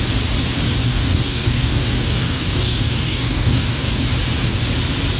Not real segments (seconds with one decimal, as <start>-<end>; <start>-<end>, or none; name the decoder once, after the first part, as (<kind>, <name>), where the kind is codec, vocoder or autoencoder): 0.8-3.9 (codec, DAC)